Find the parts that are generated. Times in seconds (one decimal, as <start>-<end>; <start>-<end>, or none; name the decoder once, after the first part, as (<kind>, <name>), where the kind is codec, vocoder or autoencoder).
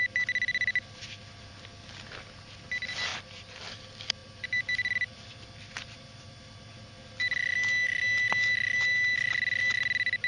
3.1-3.6 (vocoder, BigVGAN v2); 4.2-6.7